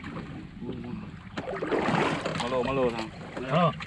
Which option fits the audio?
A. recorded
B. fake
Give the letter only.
A